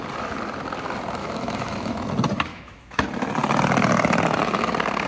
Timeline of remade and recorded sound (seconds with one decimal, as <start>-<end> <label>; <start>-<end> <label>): 0.0-1.2 recorded; 1.2-2.1 remade; 2.1-2.5 recorded; 2.5-3.0 remade; 3.0-5.1 recorded

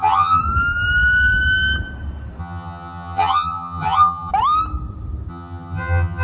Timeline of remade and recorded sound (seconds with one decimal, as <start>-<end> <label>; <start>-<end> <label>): 0.0-0.4 remade; 0.4-2.4 recorded; 2.4-4.3 remade; 4.3-5.3 recorded; 5.3-6.2 remade

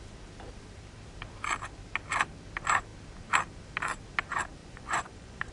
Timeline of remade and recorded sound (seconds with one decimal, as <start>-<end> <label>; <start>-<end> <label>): 0.0-4.6 recorded; 4.6-5.5 remade